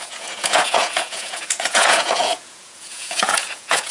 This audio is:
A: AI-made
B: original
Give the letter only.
A